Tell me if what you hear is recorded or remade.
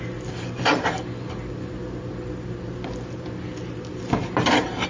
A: recorded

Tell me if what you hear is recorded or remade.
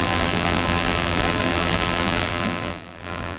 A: remade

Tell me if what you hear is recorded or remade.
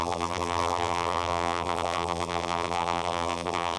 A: remade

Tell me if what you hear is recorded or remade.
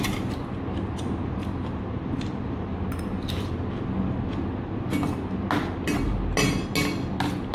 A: recorded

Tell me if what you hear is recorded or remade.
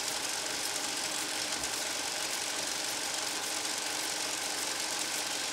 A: remade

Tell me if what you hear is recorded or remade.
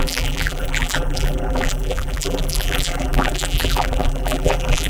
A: remade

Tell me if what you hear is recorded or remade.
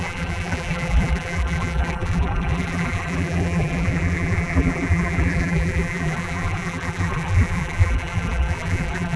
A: remade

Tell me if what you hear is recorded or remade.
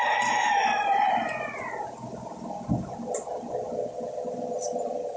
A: recorded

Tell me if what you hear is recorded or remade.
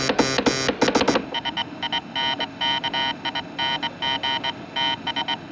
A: recorded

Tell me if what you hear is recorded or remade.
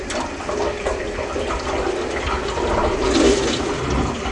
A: remade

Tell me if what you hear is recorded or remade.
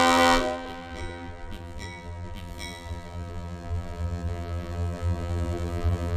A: remade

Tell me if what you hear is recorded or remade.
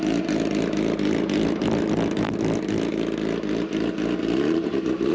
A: remade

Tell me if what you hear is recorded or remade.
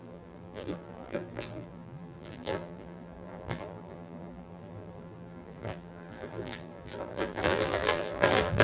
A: remade